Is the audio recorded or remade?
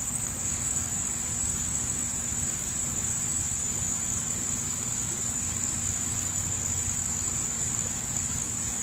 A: remade